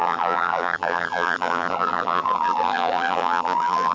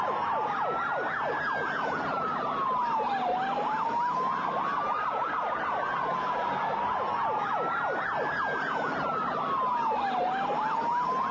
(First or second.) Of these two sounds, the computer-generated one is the first